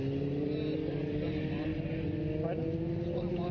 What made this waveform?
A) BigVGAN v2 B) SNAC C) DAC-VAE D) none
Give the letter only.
D